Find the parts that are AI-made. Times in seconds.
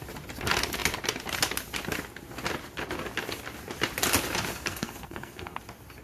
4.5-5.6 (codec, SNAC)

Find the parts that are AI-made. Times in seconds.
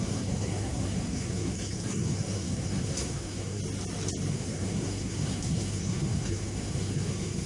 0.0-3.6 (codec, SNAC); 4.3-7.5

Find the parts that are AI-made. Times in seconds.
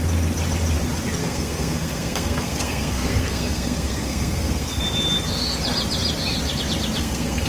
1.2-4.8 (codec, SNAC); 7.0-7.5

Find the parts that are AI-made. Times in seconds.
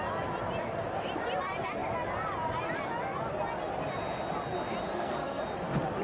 4.9-5.4 (codec, SNAC)